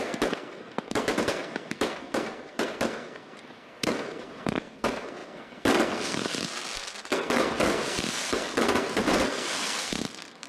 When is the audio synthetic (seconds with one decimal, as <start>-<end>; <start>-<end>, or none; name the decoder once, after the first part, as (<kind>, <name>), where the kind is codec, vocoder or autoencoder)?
0.0-10.5 (codec, SNAC)